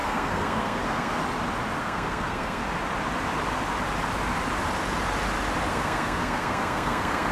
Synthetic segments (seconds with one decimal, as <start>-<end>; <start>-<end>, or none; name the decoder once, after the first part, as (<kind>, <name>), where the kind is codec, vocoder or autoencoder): 0.0-1.2 (codec, SNAC); 1.8-2.6; 5.7-7.3

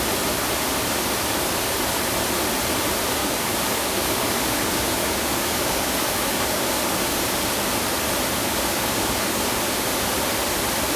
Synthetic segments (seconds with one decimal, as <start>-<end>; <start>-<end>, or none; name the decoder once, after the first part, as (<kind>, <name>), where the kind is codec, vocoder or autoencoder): 3.2-7.3 (codec, DAC); 8.4-9.5

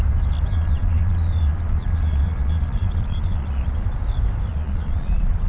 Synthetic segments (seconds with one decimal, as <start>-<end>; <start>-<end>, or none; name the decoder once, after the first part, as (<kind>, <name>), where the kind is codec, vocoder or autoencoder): 0.5-3.8 (vocoder, Vocos); 4.5-5.5

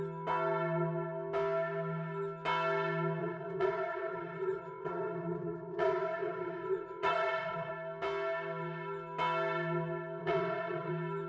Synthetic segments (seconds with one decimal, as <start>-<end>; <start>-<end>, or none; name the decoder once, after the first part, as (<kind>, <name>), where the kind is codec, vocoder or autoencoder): 3.2-7.7 (vocoder, WaveNeXt); 10.2-10.9

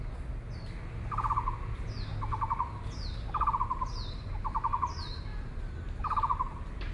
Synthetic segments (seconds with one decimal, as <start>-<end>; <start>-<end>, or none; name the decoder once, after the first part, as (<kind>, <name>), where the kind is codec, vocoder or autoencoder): none

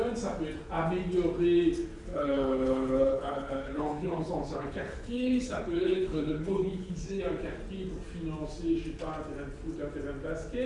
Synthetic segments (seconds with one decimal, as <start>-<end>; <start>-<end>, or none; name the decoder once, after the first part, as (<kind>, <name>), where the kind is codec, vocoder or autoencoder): 2.1-7.2 (codec, HILCodec)

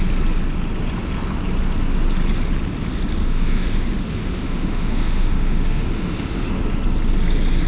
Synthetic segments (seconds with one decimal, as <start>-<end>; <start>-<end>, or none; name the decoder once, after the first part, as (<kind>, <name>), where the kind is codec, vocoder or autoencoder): 3.2-6.5 (autoencoder, DAC-VAE)

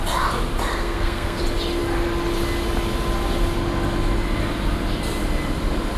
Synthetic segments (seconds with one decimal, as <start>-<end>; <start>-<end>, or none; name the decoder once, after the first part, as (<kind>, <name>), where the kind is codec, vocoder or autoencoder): 0.7-1.4 (codec, SNAC)